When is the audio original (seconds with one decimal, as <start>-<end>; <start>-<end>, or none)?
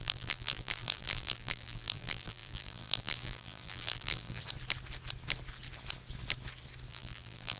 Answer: 4.4-6.9